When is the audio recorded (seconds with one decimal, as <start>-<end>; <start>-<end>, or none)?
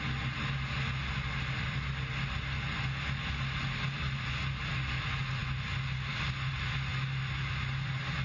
0.0-8.2